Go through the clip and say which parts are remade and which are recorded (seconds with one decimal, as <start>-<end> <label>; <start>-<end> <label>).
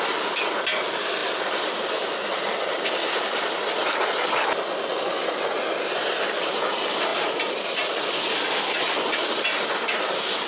0.0-10.5 recorded